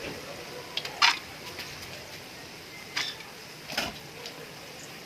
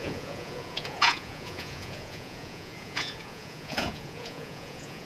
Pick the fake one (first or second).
second